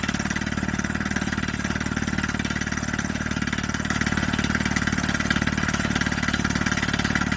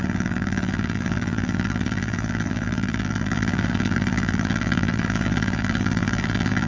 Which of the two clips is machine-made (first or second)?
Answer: second